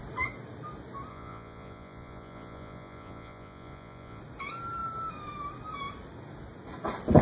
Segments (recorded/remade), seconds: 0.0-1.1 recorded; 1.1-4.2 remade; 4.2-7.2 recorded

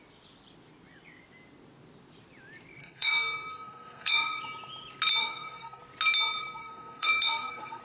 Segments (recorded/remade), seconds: 0.0-2.8 recorded; 2.8-4.4 remade; 4.4-5.2 recorded; 5.2-5.8 remade; 5.8-6.6 recorded; 6.6-7.8 remade

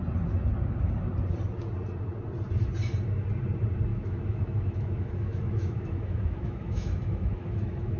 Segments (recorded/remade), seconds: 0.0-3.9 recorded; 3.9-8.0 remade

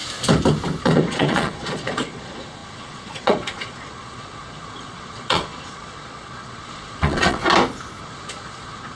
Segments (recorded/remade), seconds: 0.0-0.8 recorded; 0.8-7.4 remade; 7.4-8.0 recorded; 8.0-9.0 remade

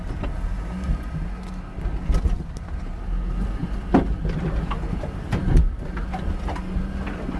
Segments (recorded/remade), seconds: 0.0-7.4 recorded

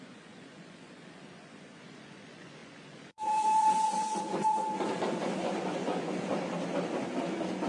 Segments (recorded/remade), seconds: 0.0-6.3 remade; 6.3-7.7 recorded

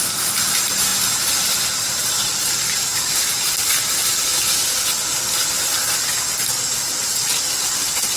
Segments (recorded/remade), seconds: 0.0-8.2 recorded